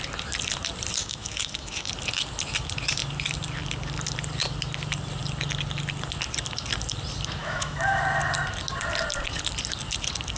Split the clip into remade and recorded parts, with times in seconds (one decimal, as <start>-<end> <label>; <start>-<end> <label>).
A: 0.0-1.0 recorded; 1.0-1.9 remade; 1.9-7.4 recorded; 7.4-8.0 remade; 8.0-10.4 recorded